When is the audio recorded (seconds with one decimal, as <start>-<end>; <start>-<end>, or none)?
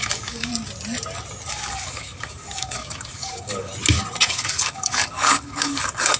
0.5-1.5; 3.7-4.3